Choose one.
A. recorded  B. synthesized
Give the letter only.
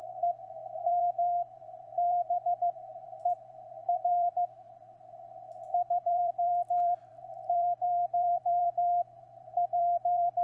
B